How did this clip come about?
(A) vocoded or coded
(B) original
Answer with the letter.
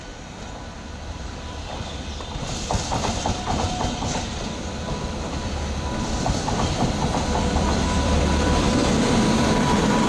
A